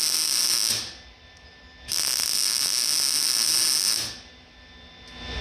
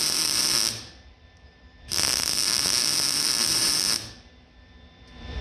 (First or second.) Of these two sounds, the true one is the first